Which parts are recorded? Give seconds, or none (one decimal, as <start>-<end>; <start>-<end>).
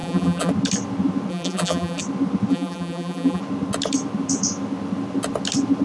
0.5-1.3; 2.0-2.5; 3.4-5.8